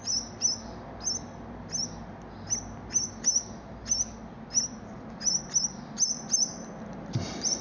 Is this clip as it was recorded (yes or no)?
yes